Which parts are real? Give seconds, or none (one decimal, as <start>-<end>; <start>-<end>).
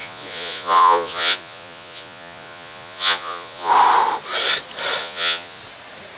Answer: 3.7-5.0; 5.6-6.2